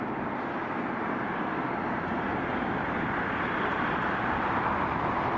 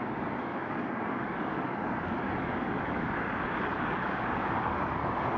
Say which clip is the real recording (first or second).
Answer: first